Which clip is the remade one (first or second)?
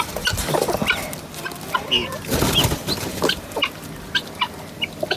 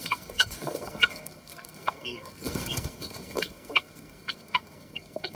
second